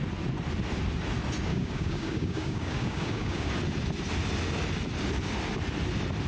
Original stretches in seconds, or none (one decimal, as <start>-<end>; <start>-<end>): 0.0-1.5; 3.5-6.3